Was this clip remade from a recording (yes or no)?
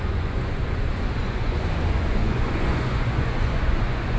yes